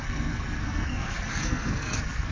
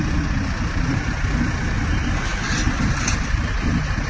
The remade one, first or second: first